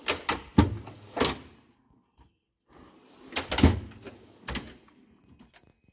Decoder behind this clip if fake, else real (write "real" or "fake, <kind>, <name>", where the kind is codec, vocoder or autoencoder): real